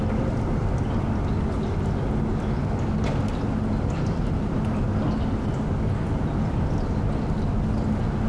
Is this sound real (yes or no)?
yes